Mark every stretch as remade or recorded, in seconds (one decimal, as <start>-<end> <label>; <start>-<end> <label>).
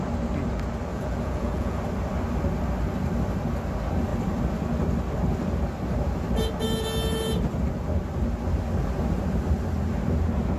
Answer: 0.0-0.9 recorded; 0.9-1.8 remade; 1.8-10.6 recorded